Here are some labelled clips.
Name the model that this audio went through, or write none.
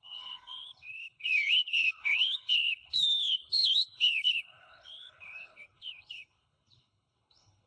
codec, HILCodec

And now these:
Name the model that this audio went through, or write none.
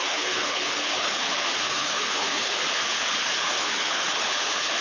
codec, HILCodec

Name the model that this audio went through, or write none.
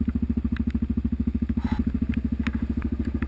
none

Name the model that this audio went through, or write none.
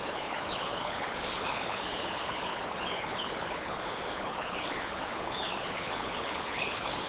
codec, HILCodec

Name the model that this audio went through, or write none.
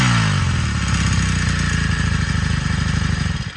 none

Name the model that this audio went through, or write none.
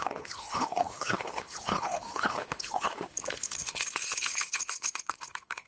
codec, HILCodec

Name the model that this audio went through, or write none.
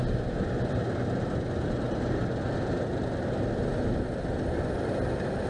none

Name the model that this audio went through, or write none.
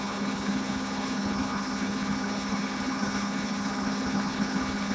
codec, HILCodec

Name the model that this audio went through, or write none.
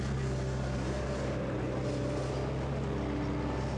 none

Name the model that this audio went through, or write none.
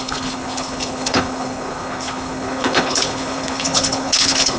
codec, HILCodec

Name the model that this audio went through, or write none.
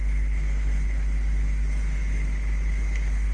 codec, HILCodec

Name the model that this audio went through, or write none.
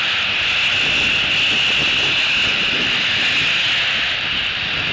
none